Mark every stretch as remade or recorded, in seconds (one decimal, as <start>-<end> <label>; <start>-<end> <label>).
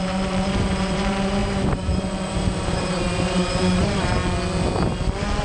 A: 0.0-4.2 remade; 4.2-5.4 recorded